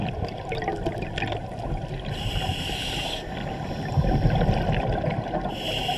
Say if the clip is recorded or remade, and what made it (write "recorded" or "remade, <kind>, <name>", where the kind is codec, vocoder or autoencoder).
recorded